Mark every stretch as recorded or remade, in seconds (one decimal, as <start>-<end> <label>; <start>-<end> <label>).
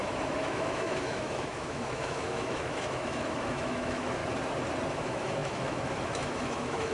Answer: 0.0-4.2 remade; 4.2-4.9 recorded; 4.9-6.9 remade